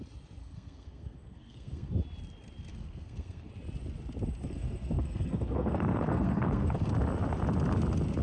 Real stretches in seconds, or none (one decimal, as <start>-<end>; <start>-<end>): 0.0-0.4; 1.9-2.7; 3.5-4.4; 6.9-8.2